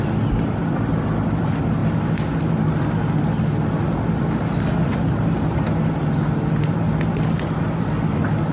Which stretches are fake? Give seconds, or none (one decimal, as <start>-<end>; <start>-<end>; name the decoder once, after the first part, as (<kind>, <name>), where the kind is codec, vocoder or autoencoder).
none